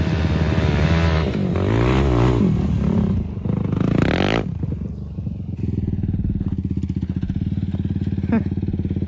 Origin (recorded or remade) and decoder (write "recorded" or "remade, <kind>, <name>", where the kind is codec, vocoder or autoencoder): recorded